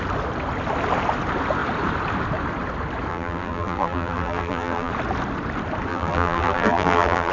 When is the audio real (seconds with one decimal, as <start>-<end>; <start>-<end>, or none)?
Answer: 0.0-3.1; 4.9-5.9